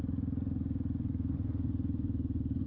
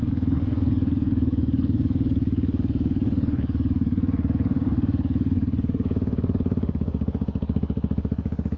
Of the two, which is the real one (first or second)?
first